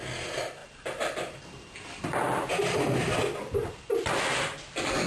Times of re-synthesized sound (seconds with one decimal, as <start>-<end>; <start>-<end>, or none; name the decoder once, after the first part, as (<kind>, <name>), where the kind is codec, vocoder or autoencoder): 0.6-3.7 (vocoder, BigVGAN v2)